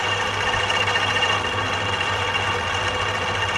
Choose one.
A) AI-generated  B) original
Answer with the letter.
B